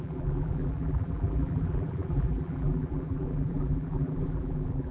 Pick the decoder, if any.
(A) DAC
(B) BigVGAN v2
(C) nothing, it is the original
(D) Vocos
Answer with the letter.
B